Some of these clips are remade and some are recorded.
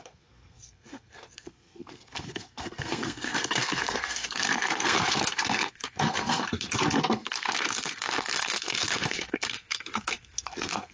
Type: remade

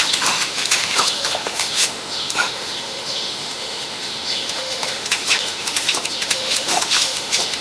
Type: remade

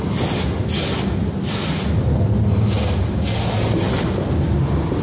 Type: recorded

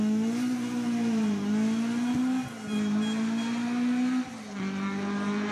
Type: recorded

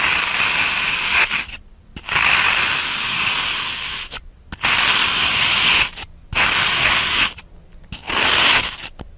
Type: recorded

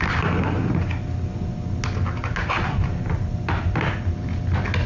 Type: recorded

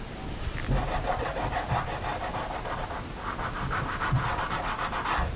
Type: recorded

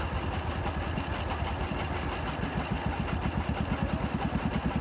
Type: recorded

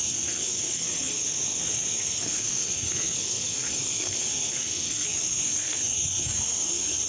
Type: remade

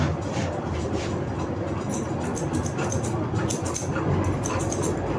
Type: recorded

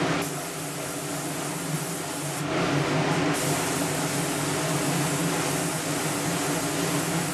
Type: recorded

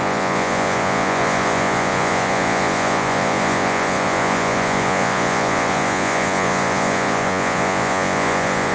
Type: remade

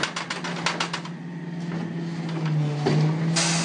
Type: recorded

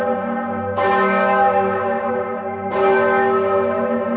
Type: remade